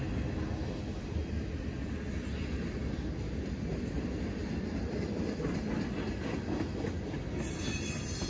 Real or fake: real